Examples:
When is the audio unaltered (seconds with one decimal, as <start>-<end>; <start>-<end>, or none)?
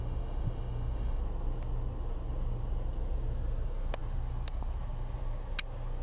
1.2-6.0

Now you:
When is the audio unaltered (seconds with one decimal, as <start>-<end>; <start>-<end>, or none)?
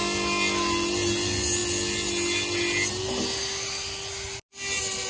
0.0-5.1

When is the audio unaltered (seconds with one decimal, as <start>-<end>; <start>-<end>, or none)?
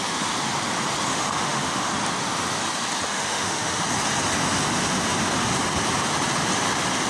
0.0-1.1; 1.9-3.1; 3.8-7.1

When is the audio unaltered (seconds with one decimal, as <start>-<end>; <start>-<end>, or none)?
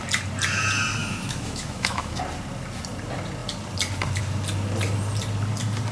0.0-1.0; 2.2-5.9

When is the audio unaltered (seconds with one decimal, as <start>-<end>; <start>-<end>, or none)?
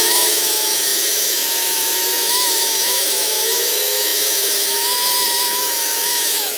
none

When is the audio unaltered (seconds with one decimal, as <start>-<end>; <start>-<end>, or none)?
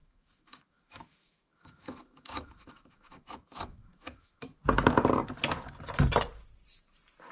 4.4-7.3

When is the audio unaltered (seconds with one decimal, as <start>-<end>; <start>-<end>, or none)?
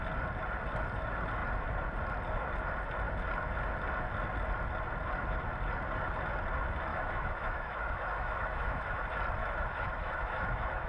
0.0-6.9; 9.0-9.4